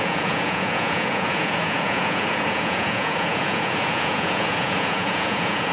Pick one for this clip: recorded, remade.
remade